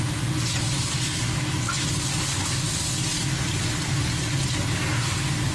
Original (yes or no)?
yes